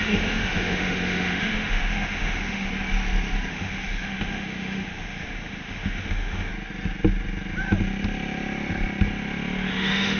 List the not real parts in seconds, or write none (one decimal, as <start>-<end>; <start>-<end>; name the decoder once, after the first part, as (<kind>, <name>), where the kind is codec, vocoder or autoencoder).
0.0-2.7 (autoencoder, DAC-VAE); 3.5-6.5; 9.7-10.2